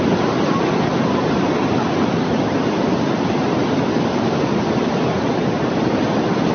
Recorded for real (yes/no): no